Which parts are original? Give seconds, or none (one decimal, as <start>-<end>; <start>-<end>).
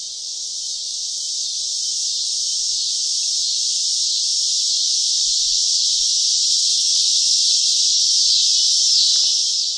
0.0-5.5; 6.1-6.5; 7.8-9.8